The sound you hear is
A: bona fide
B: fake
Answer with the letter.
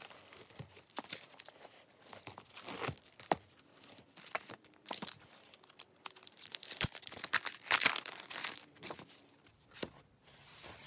B